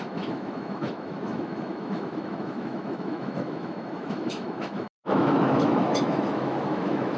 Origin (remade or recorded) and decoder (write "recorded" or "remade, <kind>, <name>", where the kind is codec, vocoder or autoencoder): remade, autoencoder, DAC-VAE